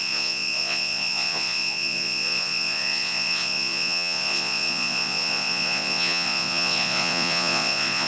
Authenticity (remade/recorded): remade